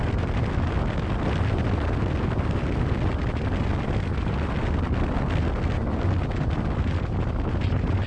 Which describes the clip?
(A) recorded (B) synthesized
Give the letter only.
A